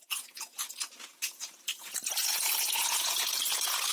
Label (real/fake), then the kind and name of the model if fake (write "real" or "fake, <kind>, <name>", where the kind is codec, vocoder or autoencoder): fake, vocoder, Vocos